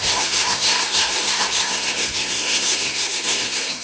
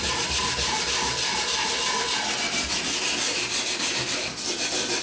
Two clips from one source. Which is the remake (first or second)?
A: first